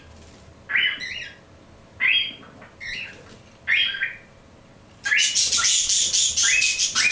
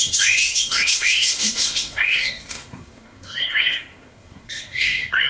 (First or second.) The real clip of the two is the first